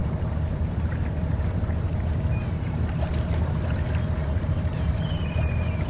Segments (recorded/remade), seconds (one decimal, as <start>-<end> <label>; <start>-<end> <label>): 0.0-3.5 remade; 3.5-4.2 recorded; 4.2-5.9 remade